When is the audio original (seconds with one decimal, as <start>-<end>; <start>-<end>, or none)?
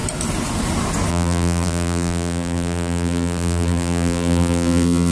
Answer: 0.0-1.1